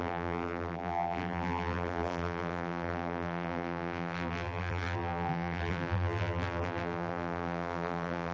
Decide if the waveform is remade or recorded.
remade